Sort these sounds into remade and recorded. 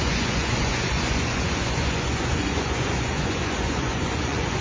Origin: remade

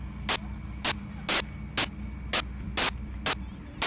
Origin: recorded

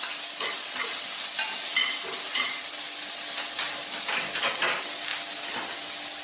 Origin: recorded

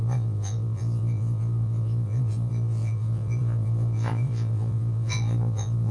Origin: remade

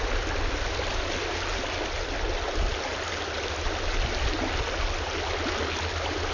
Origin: recorded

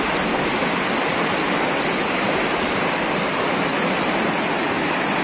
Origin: recorded